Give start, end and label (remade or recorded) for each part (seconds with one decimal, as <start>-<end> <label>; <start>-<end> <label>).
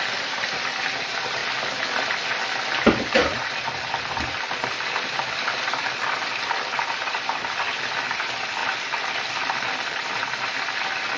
0.0-3.2 recorded; 3.2-7.0 remade; 7.0-8.6 recorded; 8.6-10.2 remade; 10.2-11.2 recorded